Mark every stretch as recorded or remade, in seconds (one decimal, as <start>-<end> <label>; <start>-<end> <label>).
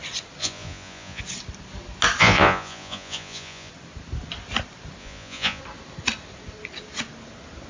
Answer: 0.0-0.4 recorded; 0.4-1.2 remade; 1.2-2.2 recorded; 2.2-3.7 remade; 3.7-5.0 recorded; 5.0-5.6 remade; 5.6-7.7 recorded